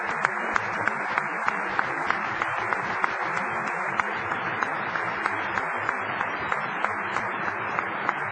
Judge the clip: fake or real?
real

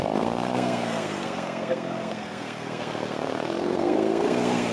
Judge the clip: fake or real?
fake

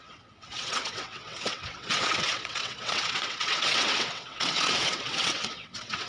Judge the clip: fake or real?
fake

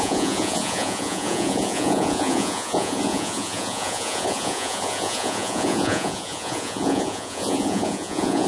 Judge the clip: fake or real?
fake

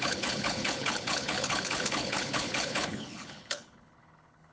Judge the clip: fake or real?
fake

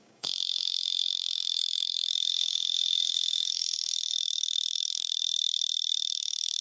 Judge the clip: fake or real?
fake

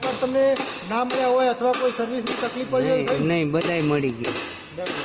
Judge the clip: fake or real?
real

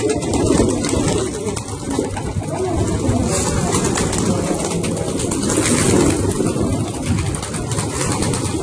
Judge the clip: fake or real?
real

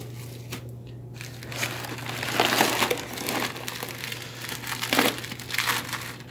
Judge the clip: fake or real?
real